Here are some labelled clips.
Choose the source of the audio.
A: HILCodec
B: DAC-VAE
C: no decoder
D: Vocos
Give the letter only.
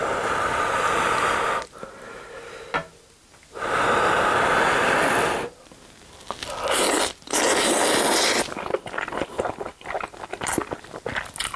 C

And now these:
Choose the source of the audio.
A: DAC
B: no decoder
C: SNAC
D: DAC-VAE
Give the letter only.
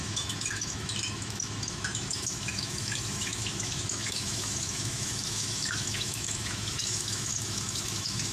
D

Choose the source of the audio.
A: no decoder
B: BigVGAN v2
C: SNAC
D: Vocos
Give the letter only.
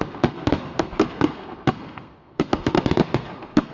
C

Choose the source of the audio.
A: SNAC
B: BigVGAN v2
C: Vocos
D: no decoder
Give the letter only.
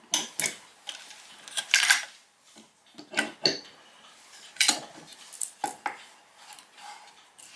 D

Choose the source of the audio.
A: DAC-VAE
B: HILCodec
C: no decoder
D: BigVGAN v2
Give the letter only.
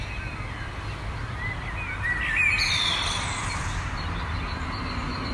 C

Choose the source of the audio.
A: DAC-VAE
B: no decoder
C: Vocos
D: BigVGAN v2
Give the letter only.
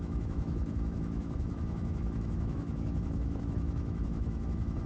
A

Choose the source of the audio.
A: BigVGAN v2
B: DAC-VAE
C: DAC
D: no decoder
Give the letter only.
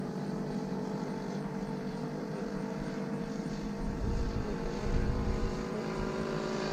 A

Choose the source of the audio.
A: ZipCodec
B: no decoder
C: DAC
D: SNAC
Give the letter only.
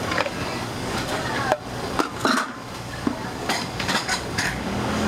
C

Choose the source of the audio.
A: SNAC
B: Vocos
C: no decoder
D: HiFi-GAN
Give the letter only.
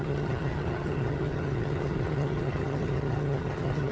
D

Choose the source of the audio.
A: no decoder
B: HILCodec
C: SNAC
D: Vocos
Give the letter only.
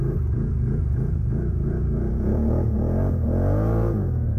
D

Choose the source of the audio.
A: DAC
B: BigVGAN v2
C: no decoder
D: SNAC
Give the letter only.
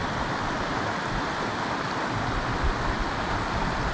C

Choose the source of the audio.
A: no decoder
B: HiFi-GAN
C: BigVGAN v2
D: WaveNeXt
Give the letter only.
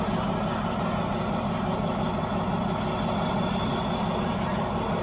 A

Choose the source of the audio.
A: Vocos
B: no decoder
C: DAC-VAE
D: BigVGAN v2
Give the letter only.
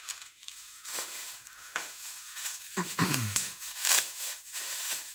C